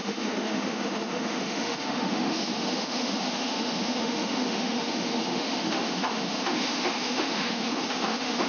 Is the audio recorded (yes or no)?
no